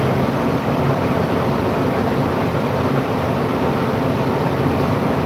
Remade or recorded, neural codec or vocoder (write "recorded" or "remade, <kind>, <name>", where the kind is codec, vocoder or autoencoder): recorded